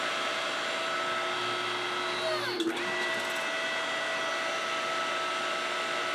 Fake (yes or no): no